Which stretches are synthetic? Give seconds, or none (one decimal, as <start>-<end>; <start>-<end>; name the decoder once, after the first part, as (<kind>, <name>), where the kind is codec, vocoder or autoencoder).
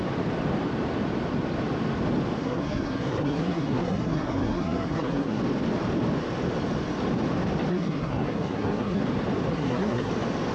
2.4-5.4 (codec, SNAC); 7.7-9.0; 9.5-10.1